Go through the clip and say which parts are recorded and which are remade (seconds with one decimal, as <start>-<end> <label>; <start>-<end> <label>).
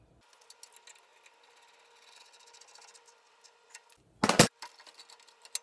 0.0-5.6 recorded